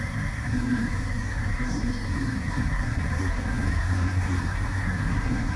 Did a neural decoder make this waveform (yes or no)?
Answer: yes